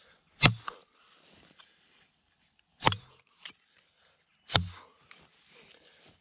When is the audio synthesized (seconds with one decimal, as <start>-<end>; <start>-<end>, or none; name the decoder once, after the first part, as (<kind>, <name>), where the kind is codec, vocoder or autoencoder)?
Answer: none